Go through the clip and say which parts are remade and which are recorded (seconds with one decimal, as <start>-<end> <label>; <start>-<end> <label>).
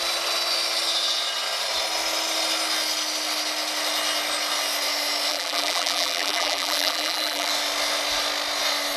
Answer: 0.0-5.3 recorded; 5.3-7.5 remade; 7.5-9.0 recorded